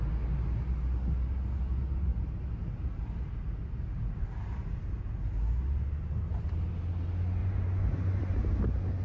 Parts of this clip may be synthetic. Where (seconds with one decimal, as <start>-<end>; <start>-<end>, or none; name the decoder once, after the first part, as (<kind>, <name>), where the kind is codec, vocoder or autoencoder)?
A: 7.4-8.2 (vocoder, Vocos)